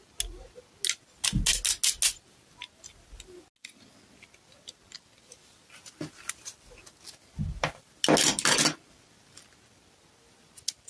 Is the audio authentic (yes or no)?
yes